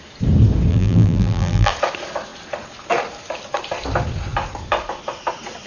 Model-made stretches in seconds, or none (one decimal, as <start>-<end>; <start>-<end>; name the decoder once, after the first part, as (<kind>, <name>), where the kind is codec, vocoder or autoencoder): 0.7-1.7 (vocoder, BigVGAN v2)